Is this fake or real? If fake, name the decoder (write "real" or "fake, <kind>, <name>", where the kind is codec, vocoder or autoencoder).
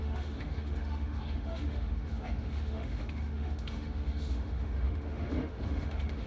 fake, autoencoder, DAC-VAE